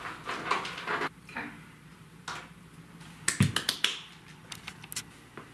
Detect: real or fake real